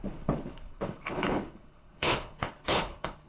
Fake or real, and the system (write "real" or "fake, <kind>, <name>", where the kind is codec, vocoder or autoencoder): fake, codec, HILCodec